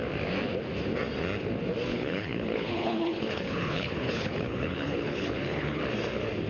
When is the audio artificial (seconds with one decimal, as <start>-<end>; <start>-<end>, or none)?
1.9-5.8

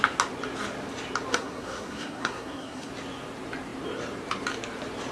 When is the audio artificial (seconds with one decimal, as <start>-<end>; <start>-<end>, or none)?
1.3-2.9

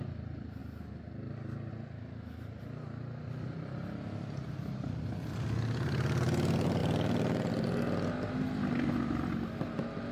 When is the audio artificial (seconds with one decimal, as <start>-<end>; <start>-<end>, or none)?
none

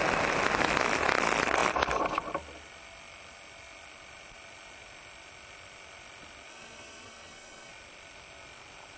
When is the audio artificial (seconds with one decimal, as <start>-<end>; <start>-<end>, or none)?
6.5-7.7